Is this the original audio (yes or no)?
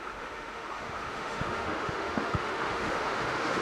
no